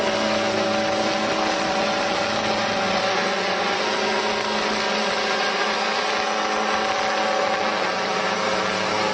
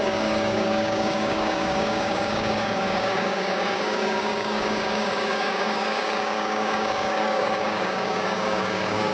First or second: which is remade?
second